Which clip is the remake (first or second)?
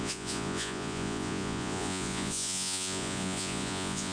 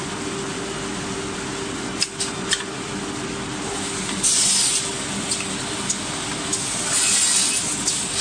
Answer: first